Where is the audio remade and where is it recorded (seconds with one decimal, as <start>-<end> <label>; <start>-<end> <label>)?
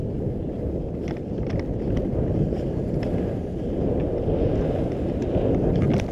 0.0-6.1 recorded